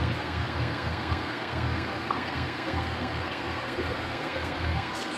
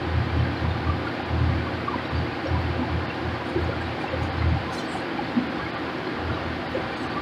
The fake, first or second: first